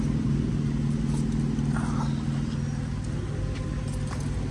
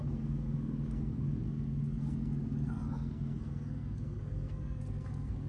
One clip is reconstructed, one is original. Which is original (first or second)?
first